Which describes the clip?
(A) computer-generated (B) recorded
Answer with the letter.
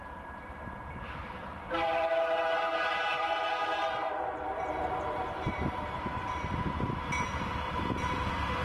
A